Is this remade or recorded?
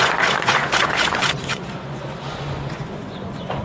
remade